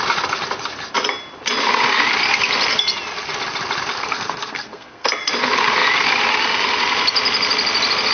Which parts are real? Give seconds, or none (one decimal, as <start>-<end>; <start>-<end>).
0.0-3.9; 5.1-8.1